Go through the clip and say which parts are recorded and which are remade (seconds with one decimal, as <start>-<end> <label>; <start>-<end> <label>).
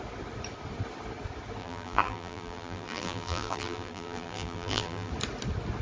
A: 0.0-1.6 recorded; 1.6-5.1 remade; 5.1-5.8 recorded